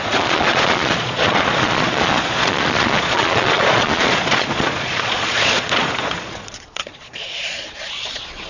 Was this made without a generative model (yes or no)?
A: no